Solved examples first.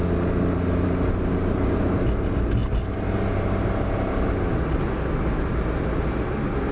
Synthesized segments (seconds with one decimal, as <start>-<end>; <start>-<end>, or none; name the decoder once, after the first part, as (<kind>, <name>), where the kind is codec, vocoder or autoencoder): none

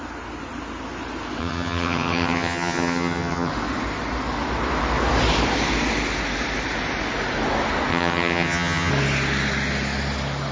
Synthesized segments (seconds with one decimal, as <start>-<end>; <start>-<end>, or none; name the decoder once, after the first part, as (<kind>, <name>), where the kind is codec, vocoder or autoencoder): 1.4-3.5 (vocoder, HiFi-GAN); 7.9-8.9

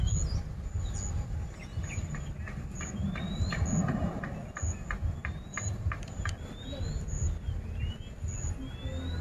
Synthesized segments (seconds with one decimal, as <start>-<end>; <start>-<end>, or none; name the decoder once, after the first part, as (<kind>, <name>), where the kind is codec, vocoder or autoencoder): 5.2-6.3 (vocoder, BigVGAN v2)

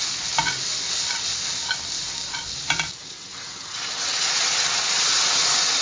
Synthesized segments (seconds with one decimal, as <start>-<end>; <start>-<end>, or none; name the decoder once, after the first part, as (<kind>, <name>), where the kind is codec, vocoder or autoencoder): 3.0-5.8 (vocoder, WaveNeXt)